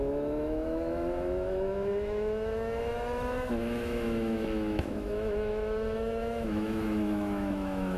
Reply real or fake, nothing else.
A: fake